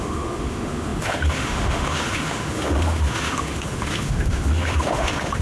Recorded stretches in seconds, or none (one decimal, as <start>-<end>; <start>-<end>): none

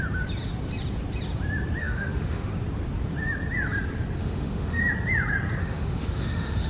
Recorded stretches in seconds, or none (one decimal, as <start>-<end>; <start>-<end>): 0.0-1.8; 2.5-4.2; 4.8-5.6

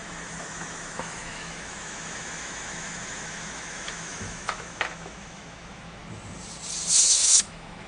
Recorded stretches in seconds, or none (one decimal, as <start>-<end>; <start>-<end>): 6.0-6.9

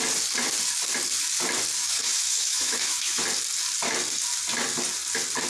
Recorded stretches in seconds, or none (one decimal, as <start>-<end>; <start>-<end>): 0.0-1.8; 3.2-5.5

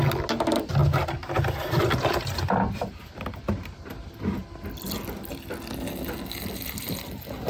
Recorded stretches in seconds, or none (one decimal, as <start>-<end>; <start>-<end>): 0.0-7.5